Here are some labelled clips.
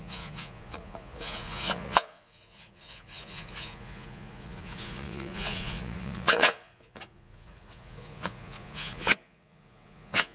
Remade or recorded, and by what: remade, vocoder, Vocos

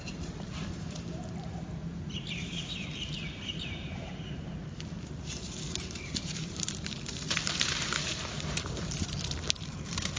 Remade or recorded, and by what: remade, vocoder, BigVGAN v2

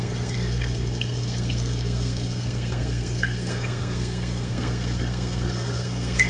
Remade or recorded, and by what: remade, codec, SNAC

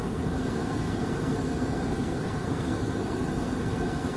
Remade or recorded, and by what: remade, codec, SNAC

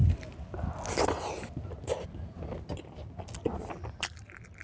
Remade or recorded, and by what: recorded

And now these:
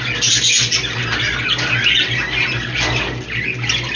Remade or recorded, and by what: recorded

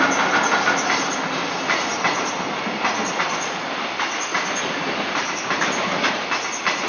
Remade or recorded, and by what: recorded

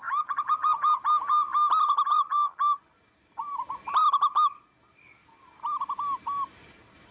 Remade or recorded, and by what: recorded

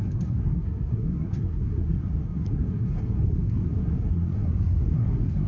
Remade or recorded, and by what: remade, codec, SNAC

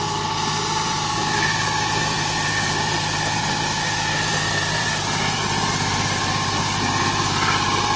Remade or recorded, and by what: remade, vocoder, BigVGAN v2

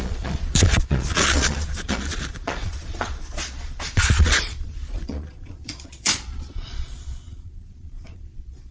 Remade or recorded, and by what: remade, vocoder, Vocos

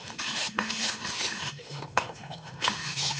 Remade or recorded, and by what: remade, autoencoder, DAC-VAE